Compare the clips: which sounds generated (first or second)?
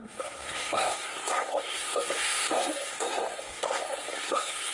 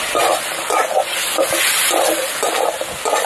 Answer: first